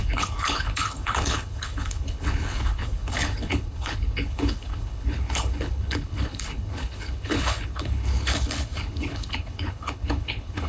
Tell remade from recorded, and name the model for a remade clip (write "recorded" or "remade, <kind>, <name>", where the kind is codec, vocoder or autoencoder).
remade, codec, HILCodec